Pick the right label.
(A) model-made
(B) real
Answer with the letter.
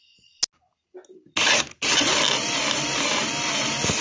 B